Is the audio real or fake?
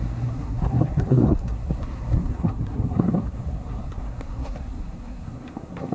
fake